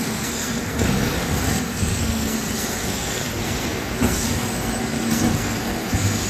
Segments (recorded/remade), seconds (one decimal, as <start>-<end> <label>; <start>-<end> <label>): 0.0-6.3 remade